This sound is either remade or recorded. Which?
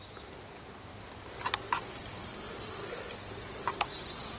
recorded